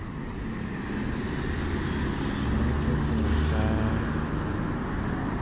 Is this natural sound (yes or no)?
yes